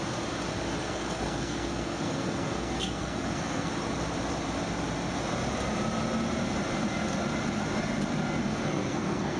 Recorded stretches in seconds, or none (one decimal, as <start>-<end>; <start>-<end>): 0.0-0.8; 3.7-8.4